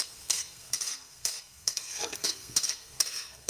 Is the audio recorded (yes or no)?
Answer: no